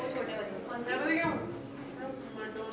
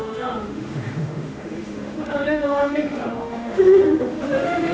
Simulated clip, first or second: second